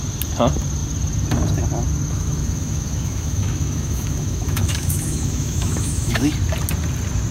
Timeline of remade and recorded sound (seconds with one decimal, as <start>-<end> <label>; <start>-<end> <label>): 0.0-2.1 recorded; 2.1-6.3 remade; 6.3-7.3 recorded